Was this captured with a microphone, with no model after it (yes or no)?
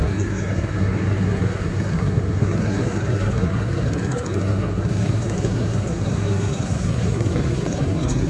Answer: no